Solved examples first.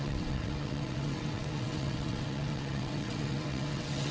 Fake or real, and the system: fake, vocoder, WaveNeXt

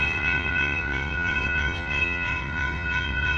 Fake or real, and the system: fake, vocoder, WaveNeXt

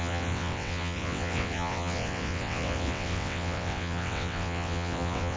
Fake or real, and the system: fake, vocoder, WaveNeXt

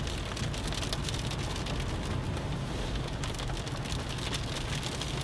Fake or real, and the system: real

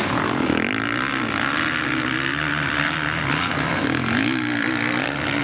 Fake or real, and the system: real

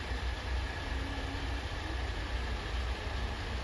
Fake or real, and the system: real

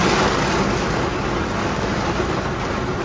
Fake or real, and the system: real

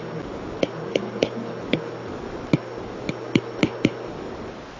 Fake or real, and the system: real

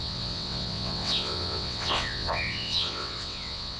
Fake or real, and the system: fake, vocoder, WaveNeXt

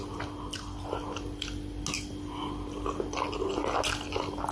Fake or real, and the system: real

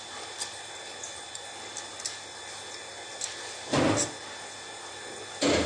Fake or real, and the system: real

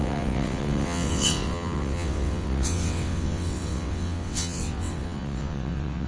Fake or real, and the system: fake, vocoder, WaveNeXt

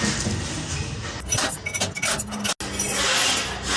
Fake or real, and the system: real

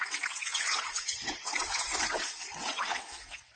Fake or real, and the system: fake, vocoder, WaveNeXt